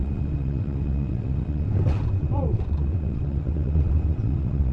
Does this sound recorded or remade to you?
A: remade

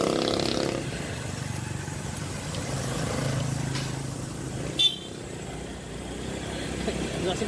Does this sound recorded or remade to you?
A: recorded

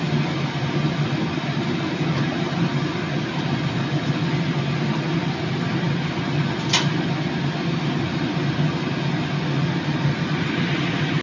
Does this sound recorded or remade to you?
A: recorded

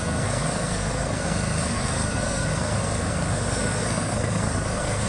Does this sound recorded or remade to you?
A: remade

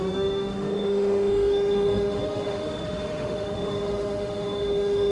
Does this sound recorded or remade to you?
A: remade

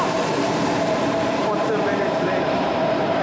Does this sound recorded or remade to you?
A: remade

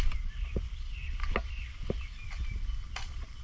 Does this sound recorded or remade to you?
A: recorded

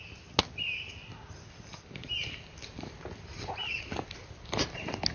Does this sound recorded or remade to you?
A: recorded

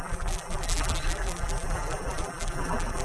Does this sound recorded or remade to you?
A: remade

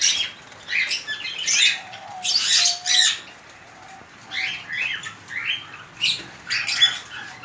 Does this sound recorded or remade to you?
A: recorded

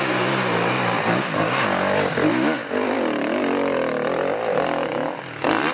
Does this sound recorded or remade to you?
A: recorded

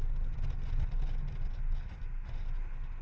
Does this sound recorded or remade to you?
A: recorded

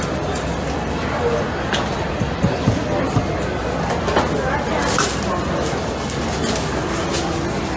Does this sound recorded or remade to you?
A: recorded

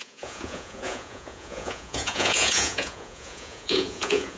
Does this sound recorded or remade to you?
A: remade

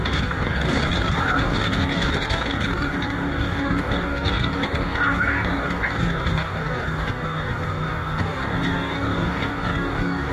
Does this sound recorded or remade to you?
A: remade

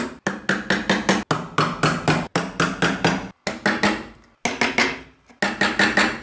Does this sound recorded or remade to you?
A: recorded